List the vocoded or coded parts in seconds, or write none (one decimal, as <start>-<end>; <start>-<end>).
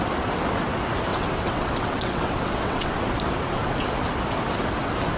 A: 1.1-2.9